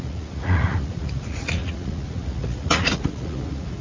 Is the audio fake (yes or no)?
yes